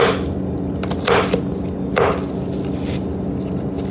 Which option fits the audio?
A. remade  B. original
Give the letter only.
B